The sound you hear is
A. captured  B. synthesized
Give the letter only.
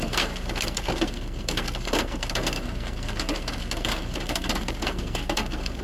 B